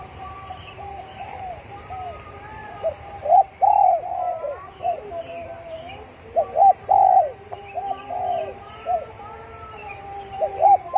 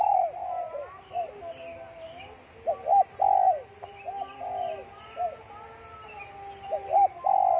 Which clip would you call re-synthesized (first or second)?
first